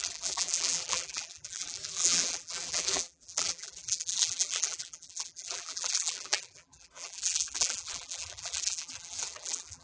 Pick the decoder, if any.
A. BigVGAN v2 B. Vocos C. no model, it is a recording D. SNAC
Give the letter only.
A